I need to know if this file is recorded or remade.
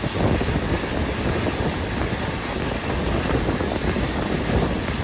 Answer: recorded